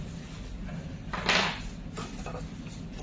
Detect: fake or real real